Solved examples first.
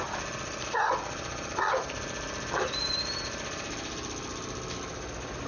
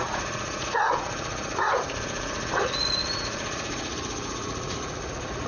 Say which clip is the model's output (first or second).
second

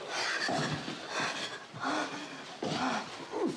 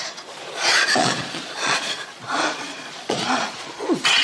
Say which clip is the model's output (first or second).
second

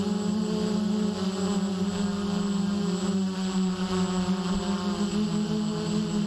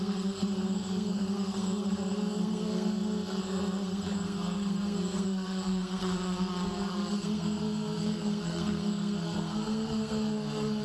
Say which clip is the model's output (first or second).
second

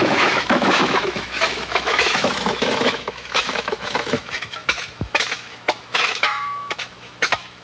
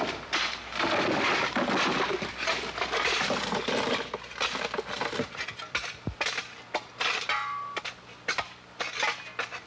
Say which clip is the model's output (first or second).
first